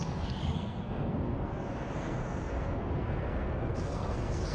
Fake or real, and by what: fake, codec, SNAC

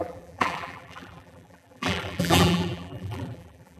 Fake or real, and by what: fake, vocoder, BigVGAN v2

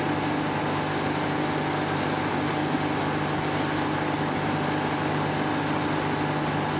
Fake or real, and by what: real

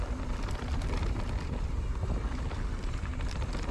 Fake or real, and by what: real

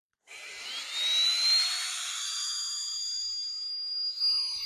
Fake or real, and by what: real